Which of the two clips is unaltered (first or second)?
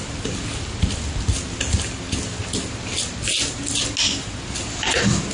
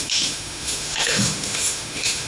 first